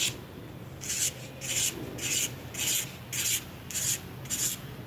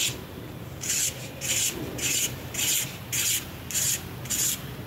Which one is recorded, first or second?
first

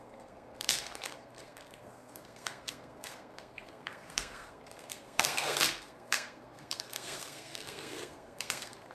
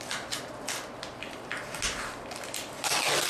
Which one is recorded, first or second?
second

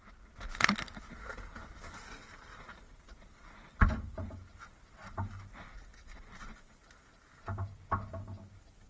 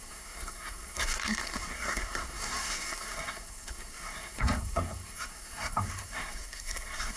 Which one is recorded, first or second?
first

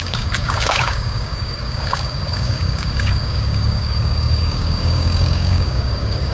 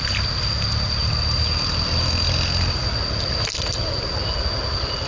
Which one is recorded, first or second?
second